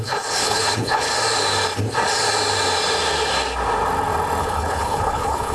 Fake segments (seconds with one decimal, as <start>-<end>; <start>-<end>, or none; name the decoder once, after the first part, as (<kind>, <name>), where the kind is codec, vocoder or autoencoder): 0.0-1.1 (codec, HILCodec); 4.4-5.5